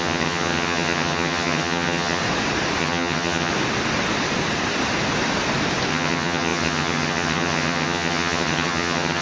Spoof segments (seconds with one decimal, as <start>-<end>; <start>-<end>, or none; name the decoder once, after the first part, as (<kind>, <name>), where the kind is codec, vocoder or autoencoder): 0.0-2.2 (vocoder, HiFi-GAN); 2.8-3.5; 5.9-9.2